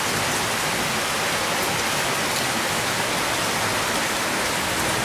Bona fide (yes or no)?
yes